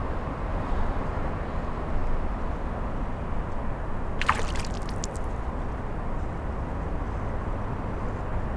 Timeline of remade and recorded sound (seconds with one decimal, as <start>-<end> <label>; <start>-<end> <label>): 0.0-0.5 recorded; 0.5-1.3 remade; 1.3-8.6 recorded